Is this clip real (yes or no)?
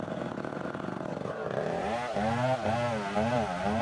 yes